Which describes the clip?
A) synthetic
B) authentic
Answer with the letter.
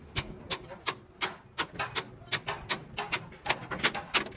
B